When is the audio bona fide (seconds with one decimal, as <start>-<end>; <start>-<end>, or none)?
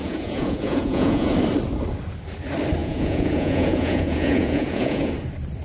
1.3-2.8; 5.1-5.6